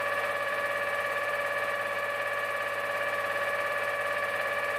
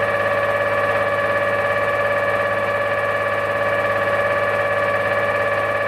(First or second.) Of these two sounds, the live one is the second